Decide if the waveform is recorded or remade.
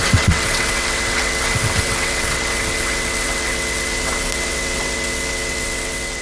remade